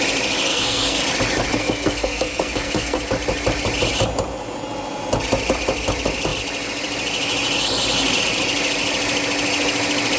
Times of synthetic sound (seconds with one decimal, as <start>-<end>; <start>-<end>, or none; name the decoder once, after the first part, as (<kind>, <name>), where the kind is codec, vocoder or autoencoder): 0.5-1.0 (codec, SNAC); 1.5-3.0